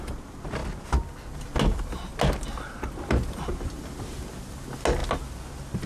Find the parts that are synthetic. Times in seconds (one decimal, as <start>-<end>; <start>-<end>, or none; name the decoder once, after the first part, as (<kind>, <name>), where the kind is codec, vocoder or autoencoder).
none